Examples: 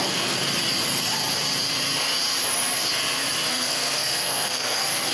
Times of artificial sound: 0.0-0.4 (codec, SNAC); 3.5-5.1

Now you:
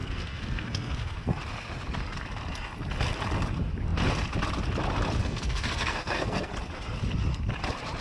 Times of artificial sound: 0.0-1.4 (codec, SNAC); 5.2-6.5

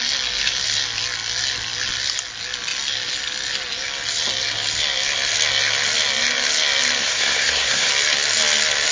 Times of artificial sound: 7.0-7.9 (codec, SNAC)

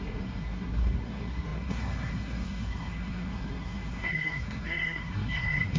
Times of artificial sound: 0.0-5.8 (codec, SNAC)

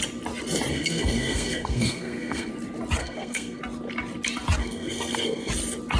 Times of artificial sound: 0.7-2.5 (codec, SNAC); 3.0-3.6; 4.6-5.5